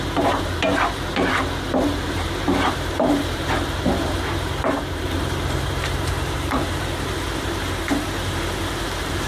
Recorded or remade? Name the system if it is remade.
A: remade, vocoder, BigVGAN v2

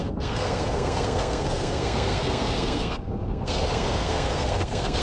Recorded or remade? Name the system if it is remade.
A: remade, codec, SNAC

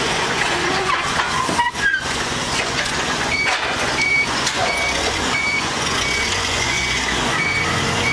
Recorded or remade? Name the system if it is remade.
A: remade, vocoder, Vocos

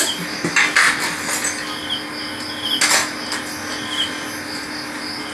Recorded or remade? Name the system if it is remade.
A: recorded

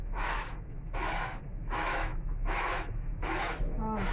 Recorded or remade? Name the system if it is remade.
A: remade, autoencoder, DAC-VAE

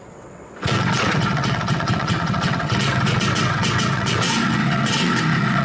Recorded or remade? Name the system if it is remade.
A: remade, vocoder, WaveNeXt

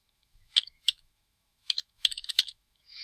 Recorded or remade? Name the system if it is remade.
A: remade, autoencoder, DAC-VAE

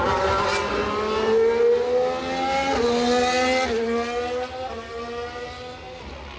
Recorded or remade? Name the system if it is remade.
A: recorded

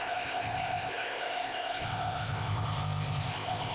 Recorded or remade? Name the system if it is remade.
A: remade, codec, ZipCodec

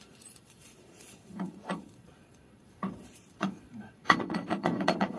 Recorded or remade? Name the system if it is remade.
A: remade, vocoder, Vocos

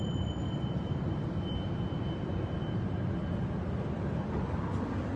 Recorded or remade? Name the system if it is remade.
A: recorded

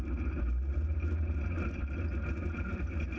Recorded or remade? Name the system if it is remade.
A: recorded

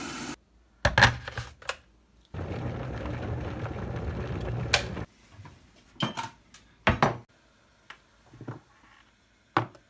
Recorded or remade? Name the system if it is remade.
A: recorded